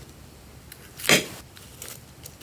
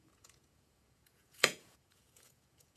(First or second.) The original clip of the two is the first